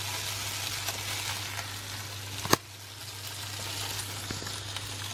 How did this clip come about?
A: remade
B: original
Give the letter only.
B